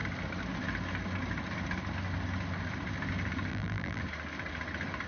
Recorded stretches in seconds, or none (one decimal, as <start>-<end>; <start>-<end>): 0.0-3.5; 4.0-5.1